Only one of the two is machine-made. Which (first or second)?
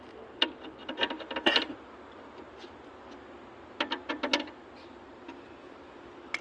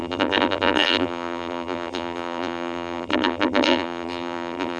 second